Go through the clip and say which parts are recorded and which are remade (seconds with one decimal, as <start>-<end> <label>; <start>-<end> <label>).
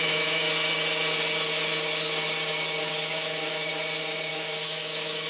0.0-0.5 remade; 0.5-2.8 recorded; 2.8-3.7 remade; 3.7-4.3 recorded; 4.3-5.3 remade